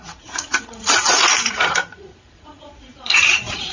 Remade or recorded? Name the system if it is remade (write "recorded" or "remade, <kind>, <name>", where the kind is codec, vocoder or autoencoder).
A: remade, vocoder, Vocos